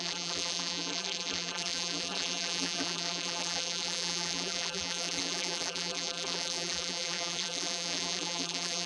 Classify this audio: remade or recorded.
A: remade